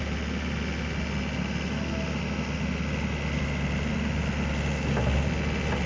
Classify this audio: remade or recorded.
recorded